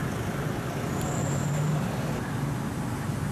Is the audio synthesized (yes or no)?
no